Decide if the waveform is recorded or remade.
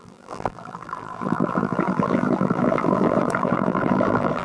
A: remade